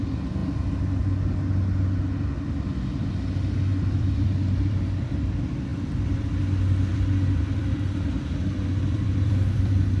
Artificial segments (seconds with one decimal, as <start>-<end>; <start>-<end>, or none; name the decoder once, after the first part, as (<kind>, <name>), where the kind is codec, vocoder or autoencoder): 0.4-1.0 (vocoder, BigVGAN v2); 3.7-5.2; 5.7-6.3; 6.9-10.0